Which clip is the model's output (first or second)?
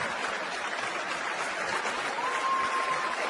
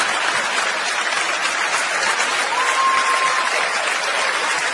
first